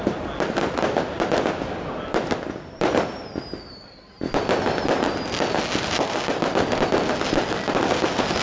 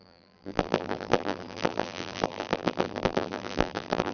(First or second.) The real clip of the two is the first